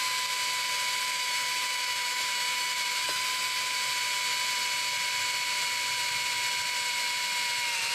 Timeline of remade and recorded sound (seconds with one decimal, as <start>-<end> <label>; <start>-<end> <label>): 0.0-1.1 recorded; 1.1-3.2 remade; 3.2-7.9 recorded